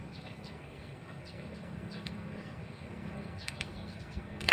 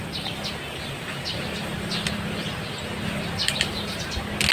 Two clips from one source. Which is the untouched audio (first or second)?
second